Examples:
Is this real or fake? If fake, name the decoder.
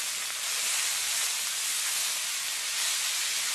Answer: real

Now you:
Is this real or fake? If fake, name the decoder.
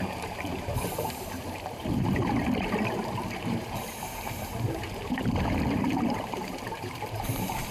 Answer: fake, vocoder, BigVGAN v2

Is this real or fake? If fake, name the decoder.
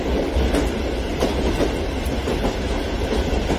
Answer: real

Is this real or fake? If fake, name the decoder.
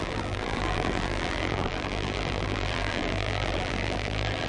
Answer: fake, vocoder, BigVGAN v2